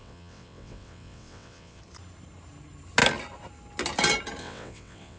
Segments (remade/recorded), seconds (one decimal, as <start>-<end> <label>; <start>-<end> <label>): 0.0-1.8 remade; 1.8-4.4 recorded; 4.4-5.2 remade